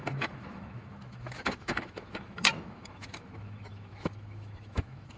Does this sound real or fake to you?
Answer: fake